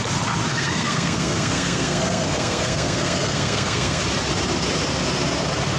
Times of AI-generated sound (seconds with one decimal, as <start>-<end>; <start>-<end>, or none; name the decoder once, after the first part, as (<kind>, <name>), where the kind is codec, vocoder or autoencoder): 0.5-4.0 (codec, SNAC)